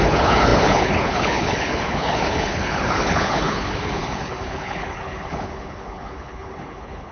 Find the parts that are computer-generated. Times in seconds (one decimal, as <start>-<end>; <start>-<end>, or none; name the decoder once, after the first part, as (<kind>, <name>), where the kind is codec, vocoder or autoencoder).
0.0-7.1 (codec, HILCodec)